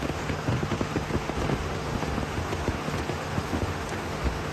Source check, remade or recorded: remade